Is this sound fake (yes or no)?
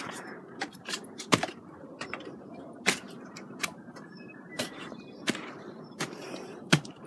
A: yes